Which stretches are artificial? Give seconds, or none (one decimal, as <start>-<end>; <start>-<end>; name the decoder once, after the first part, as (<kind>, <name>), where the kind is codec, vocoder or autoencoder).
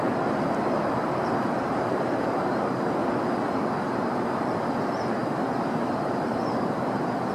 0.0-3.0 (vocoder, BigVGAN v2); 3.8-5.2; 5.7-7.3